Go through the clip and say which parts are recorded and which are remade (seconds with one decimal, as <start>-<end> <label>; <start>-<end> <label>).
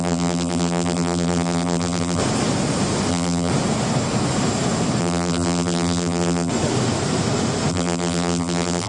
0.0-2.2 remade; 2.2-3.1 recorded; 3.1-3.5 remade; 3.5-5.0 recorded; 5.0-6.5 remade; 6.5-7.7 recorded; 7.7-8.9 remade